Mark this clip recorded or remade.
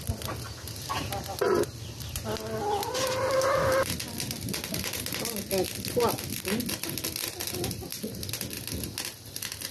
recorded